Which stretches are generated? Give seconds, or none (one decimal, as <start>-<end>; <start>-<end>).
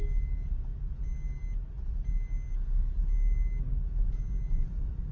none